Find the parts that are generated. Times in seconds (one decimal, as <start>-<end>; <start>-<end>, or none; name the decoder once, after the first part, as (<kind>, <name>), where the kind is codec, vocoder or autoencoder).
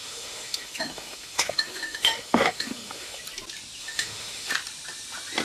0.0-3.2 (autoencoder, DAC-VAE); 3.8-4.5